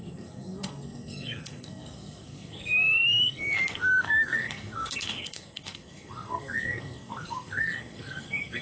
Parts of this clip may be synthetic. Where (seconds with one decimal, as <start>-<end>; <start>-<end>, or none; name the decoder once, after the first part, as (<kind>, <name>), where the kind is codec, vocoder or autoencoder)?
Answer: 0.0-8.6 (codec, SNAC)